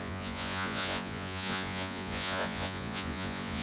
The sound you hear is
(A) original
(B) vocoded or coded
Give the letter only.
B